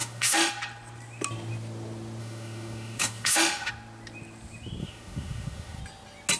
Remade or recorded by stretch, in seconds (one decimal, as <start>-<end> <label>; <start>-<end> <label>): 0.0-0.5 remade; 0.5-2.2 recorded; 2.2-3.7 remade; 3.7-4.8 recorded; 4.8-5.8 remade; 5.8-6.4 recorded